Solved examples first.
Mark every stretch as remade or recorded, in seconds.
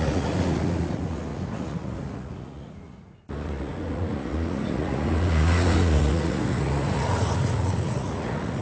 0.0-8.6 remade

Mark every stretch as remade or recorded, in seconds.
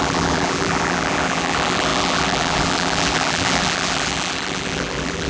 0.0-5.3 remade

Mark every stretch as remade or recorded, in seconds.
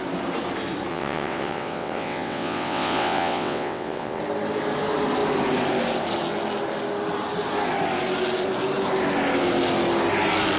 0.0-0.9 recorded; 0.9-4.2 remade; 4.2-10.6 recorded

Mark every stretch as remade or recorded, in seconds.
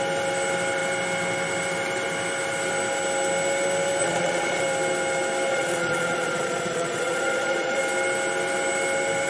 0.0-4.0 recorded; 4.0-4.6 remade; 4.6-5.5 recorded; 5.5-7.8 remade; 7.8-9.3 recorded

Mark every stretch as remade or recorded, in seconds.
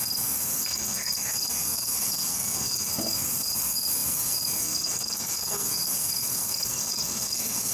0.0-7.7 remade